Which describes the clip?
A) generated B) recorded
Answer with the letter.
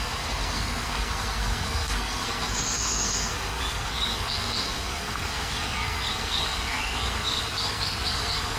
A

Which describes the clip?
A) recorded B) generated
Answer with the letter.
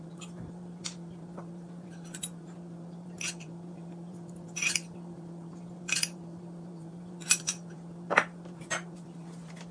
B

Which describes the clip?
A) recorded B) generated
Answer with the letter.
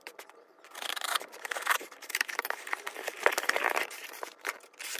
B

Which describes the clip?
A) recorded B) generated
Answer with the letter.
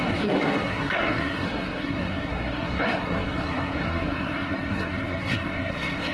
B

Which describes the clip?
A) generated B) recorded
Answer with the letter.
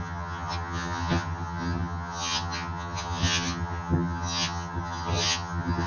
A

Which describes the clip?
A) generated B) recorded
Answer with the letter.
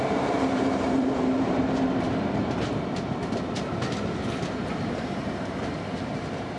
A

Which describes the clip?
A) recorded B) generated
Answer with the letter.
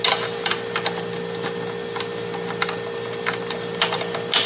A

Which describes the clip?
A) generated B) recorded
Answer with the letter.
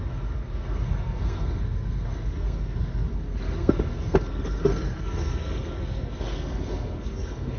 A